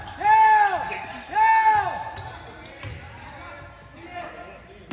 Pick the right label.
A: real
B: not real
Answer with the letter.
A